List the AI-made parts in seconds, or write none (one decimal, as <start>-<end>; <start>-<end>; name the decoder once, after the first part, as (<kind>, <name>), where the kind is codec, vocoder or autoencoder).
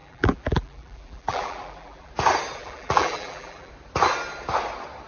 0.0-2.1 (vocoder, BigVGAN v2); 2.6-3.7